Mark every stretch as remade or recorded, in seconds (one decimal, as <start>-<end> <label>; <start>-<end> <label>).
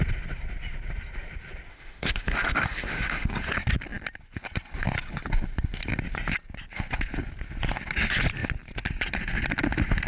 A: 0.0-1.7 recorded; 1.7-3.3 remade; 3.3-10.1 recorded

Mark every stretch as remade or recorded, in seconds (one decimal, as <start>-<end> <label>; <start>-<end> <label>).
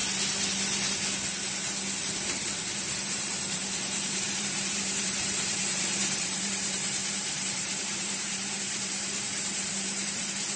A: 0.0-2.0 recorded; 2.0-10.6 remade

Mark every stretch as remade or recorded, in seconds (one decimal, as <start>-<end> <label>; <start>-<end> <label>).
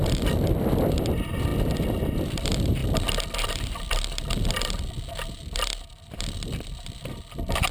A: 0.0-2.8 remade; 2.8-3.5 recorded; 3.5-7.7 remade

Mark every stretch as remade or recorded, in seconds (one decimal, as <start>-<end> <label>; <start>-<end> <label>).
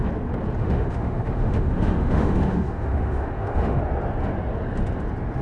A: 0.0-0.6 recorded; 0.6-3.8 remade; 3.8-5.4 recorded